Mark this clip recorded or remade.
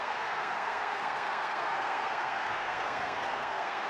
remade